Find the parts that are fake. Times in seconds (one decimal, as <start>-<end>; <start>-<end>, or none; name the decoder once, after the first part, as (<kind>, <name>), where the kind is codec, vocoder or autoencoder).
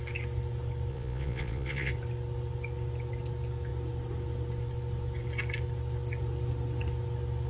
0.9-1.9 (vocoder, Vocos)